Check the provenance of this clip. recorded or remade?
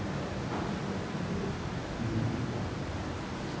recorded